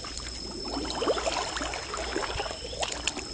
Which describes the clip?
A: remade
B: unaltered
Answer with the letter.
B